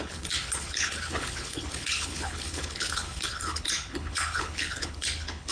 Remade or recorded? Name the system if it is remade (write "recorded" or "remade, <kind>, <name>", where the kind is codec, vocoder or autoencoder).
remade, codec, HILCodec